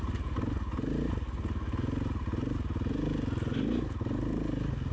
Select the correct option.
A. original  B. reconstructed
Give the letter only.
A